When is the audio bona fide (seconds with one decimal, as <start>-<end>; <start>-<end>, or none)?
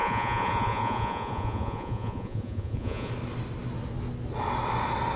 3.1-5.2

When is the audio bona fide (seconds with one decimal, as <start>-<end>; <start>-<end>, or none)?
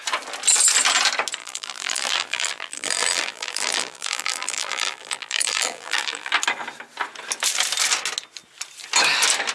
0.0-1.4; 6.3-9.5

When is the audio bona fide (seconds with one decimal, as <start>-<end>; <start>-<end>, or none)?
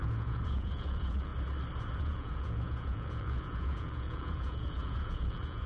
1.3-2.0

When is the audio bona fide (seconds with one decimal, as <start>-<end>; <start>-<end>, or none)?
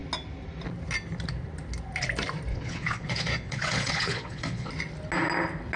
0.0-2.5; 4.7-5.8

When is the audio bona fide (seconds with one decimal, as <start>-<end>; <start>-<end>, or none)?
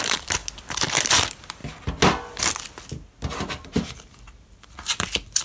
0.4-1.1; 1.6-4.8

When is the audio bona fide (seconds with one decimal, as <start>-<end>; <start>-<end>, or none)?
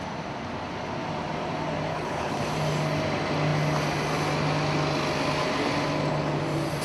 0.0-1.9; 2.4-6.8